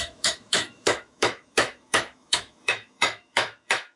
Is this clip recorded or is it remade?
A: remade